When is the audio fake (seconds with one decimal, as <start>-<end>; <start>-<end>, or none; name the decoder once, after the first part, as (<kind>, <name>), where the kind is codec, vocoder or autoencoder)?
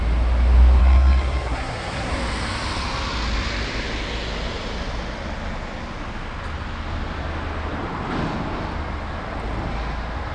0.8-2.1 (codec, SNAC)